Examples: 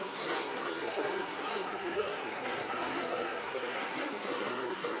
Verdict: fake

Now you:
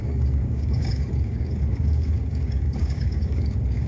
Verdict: fake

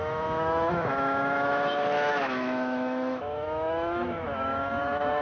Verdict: fake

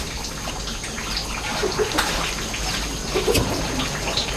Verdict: real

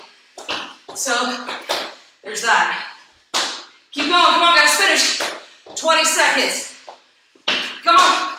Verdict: real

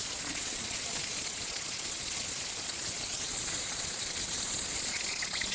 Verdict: fake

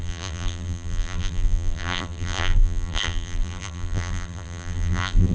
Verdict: fake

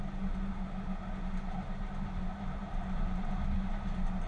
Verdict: real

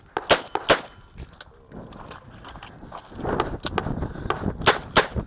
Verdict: real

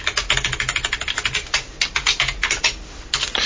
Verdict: real